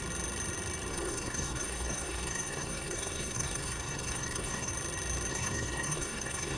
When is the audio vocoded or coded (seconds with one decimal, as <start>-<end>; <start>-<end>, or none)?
0.9-4.7; 5.3-6.6